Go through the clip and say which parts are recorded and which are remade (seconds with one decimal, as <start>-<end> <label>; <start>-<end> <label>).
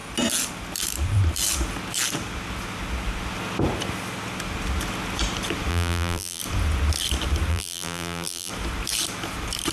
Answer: 0.0-5.7 recorded; 5.7-6.4 remade; 6.4-7.5 recorded; 7.5-8.5 remade; 8.5-9.7 recorded